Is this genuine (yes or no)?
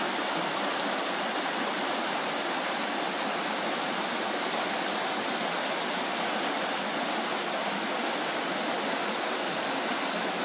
yes